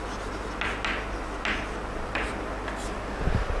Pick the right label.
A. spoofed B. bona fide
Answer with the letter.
B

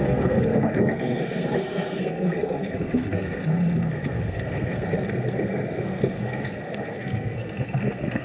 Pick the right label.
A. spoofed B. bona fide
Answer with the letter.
A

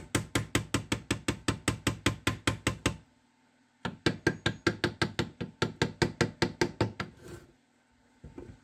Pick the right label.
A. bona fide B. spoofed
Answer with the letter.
A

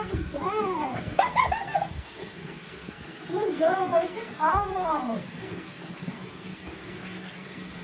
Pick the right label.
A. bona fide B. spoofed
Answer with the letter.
B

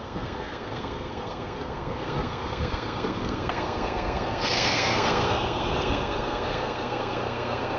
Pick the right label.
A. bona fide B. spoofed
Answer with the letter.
B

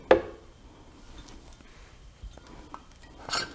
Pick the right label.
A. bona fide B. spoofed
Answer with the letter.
A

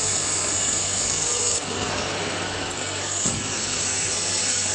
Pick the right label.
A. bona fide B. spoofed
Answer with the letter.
B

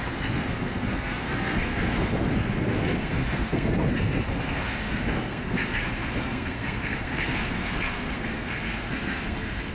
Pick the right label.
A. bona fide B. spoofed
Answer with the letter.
B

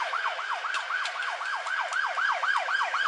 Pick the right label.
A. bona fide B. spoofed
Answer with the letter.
A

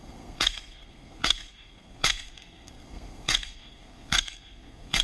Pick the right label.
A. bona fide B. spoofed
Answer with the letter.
B